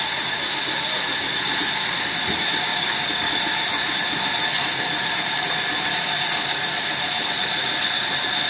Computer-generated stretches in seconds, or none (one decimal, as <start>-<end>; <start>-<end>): 2.7-3.3